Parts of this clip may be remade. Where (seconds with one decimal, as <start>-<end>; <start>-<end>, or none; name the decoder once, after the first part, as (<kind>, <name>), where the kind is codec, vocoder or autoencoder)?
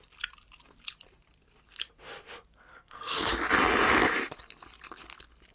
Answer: 2.7-3.3 (codec, SNAC)